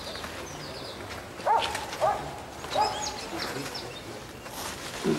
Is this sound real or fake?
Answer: real